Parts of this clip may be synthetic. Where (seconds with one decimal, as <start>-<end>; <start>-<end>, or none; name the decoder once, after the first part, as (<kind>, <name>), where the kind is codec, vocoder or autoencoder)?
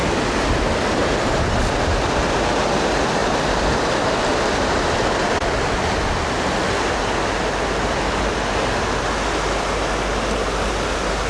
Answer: none